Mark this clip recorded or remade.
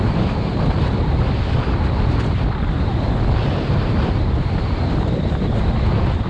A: recorded